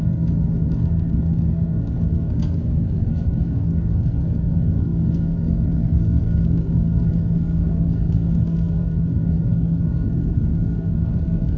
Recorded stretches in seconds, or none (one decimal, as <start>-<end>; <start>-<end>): none